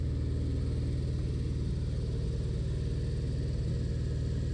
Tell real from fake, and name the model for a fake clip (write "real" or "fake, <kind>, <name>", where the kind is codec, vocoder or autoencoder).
real